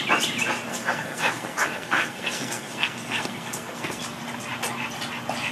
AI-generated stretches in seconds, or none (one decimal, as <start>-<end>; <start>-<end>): 0.7-4.0